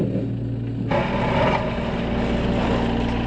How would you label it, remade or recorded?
recorded